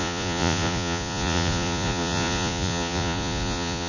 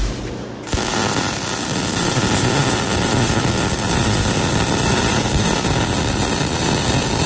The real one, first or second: second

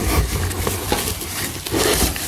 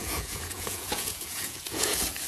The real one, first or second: first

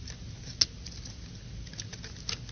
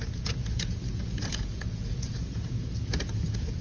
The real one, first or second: first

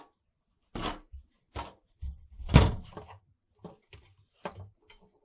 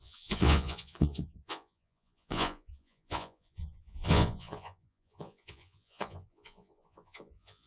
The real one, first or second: first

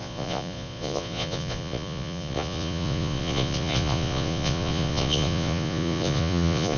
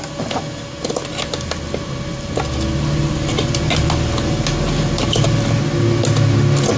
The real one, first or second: second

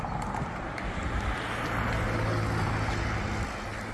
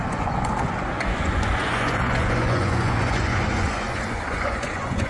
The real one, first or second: first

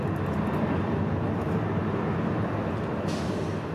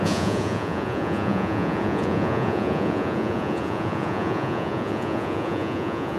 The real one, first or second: first